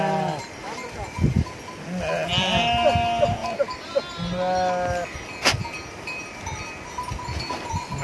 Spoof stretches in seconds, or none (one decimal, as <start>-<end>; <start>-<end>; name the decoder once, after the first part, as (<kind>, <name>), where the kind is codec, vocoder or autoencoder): none